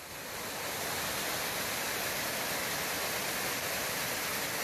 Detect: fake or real real